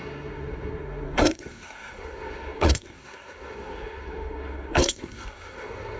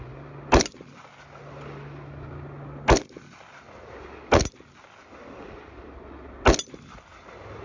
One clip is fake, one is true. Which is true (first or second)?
second